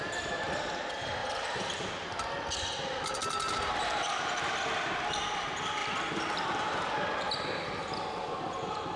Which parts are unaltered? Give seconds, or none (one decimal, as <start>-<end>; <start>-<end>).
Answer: 0.0-1.2; 2.1-9.0